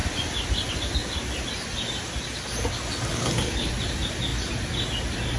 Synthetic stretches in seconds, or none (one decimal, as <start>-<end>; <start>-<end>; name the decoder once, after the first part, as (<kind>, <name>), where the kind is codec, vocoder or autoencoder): 3.1-3.7 (codec, HILCodec)